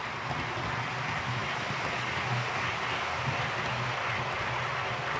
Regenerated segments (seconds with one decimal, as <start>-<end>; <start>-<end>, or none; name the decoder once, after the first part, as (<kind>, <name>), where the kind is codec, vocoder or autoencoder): none